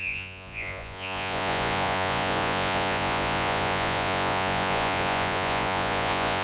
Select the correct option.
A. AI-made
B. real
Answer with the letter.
A